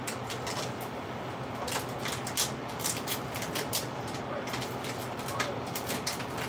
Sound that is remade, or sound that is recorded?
recorded